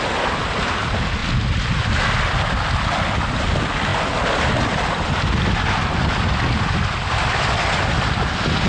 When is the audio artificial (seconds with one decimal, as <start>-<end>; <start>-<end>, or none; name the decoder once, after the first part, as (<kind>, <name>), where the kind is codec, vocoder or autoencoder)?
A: none